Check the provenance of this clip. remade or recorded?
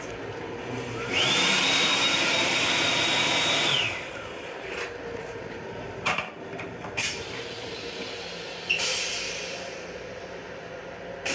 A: remade